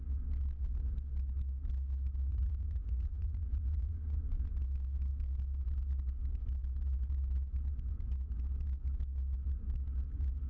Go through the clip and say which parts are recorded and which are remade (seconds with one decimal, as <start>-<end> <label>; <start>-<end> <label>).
0.0-2.3 recorded; 2.3-4.5 remade; 4.5-10.5 recorded